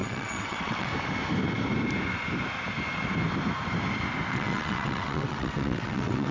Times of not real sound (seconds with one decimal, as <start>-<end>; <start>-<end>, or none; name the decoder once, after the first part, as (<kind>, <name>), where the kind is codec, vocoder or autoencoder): 0.0-0.9 (vocoder, WaveNeXt); 4.3-6.3